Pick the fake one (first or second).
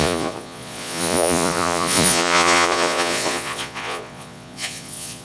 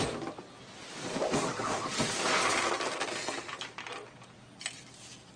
first